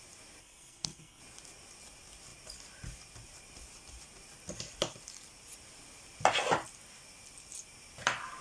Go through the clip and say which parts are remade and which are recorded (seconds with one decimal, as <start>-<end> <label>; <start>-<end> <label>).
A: 0.0-0.4 recorded; 0.4-1.2 remade; 1.2-8.4 recorded